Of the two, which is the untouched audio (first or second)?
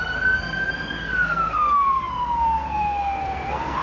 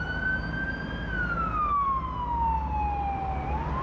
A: second